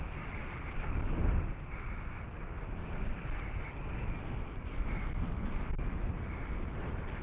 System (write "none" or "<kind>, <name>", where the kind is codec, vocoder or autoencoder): none